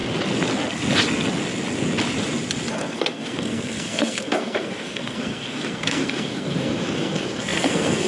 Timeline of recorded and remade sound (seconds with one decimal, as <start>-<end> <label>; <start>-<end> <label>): 0.0-2.7 recorded; 2.7-8.1 remade